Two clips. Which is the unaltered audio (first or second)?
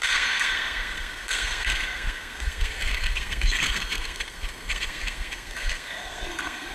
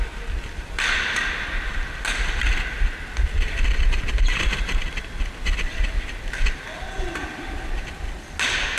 second